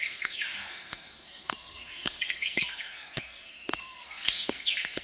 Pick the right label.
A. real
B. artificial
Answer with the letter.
B